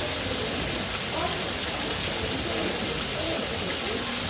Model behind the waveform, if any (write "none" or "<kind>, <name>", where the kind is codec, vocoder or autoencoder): none